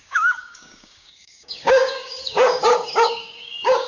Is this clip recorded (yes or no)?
no